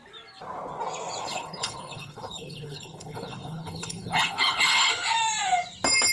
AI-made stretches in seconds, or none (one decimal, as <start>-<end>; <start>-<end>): 1.2-4.9